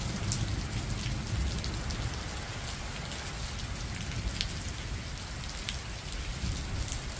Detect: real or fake real